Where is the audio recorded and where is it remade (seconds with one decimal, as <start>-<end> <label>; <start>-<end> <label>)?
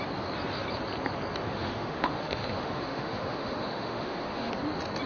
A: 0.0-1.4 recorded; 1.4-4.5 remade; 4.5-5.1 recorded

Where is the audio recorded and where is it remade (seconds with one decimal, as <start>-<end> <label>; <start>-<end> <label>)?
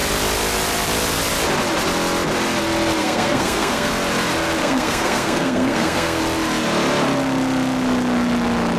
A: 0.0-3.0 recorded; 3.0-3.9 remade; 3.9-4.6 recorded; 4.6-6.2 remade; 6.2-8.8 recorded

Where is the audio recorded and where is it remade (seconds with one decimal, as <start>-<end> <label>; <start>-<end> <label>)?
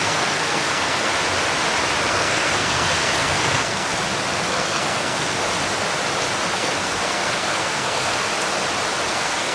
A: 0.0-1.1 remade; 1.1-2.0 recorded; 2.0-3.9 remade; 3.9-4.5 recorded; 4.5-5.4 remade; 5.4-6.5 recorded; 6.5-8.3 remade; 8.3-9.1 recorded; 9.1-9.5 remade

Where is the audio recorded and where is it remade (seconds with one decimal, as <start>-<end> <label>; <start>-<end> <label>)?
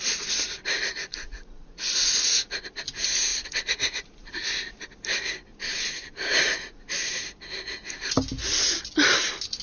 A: 0.0-1.1 recorded; 1.1-2.1 remade; 2.1-3.3 recorded; 3.3-4.3 remade; 4.3-5.5 recorded; 5.5-6.9 remade; 6.9-9.6 recorded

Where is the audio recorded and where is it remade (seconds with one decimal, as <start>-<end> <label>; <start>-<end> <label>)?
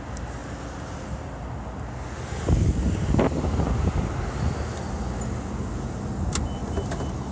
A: 0.0-7.3 recorded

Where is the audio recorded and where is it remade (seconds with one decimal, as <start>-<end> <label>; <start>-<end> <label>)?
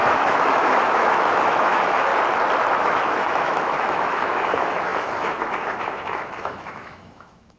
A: 0.0-2.1 remade; 2.1-2.8 recorded; 2.8-7.6 remade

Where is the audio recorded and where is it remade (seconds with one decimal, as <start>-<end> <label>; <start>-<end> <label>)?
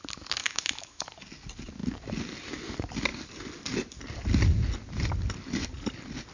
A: 0.0-0.4 recorded; 0.4-1.0 remade; 1.0-6.3 recorded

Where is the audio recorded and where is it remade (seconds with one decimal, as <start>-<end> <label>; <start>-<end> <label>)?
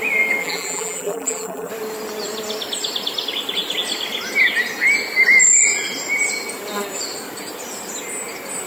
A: 0.0-0.4 recorded; 0.4-1.7 remade; 1.7-8.7 recorded